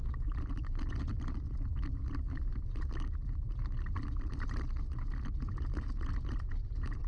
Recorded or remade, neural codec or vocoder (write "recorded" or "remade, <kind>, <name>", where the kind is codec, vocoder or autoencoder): recorded